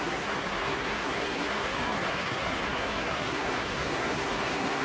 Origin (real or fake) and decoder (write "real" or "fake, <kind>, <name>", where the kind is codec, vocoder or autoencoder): fake, codec, SNAC